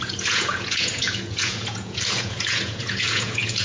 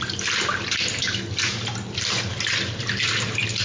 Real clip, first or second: second